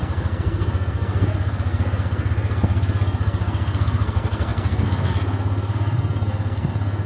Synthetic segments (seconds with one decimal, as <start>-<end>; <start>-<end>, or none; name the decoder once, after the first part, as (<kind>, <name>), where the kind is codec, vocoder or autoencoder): 0.0-7.1 (codec, SNAC)